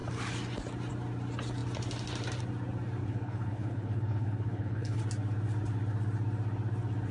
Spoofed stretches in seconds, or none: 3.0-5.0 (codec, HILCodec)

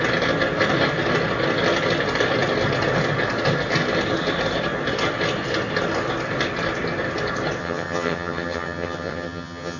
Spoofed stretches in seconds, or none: 7.6-9.8 (vocoder, HiFi-GAN)

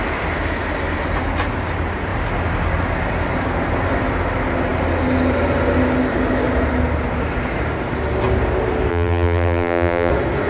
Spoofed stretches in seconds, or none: 8.9-10.1 (vocoder, BigVGAN v2)

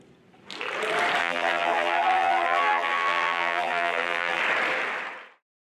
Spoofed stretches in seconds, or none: 1.2-4.4 (vocoder, BigVGAN v2)

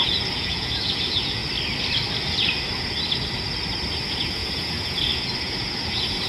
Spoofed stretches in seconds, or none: 0.0-1.4 (vocoder, Vocos); 4.1-6.3

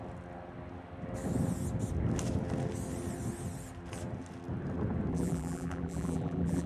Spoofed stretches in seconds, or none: 5.1-6.7 (vocoder, BigVGAN v2)